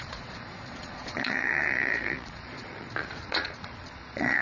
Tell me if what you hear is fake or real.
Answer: fake